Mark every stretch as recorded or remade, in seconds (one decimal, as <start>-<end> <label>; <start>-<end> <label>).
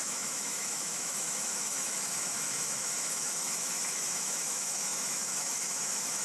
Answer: 0.0-6.2 remade